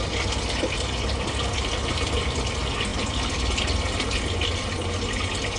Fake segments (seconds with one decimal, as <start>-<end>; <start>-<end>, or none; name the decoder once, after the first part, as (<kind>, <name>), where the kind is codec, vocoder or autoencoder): none